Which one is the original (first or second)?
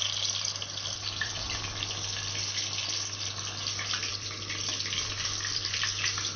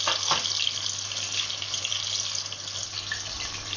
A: second